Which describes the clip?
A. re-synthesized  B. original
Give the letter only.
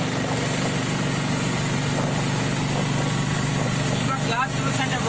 B